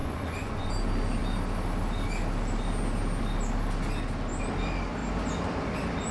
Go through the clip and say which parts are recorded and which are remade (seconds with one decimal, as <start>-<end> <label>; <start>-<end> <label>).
0.0-0.7 remade; 0.7-6.1 recorded